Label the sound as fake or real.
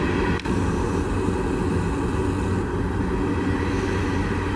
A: real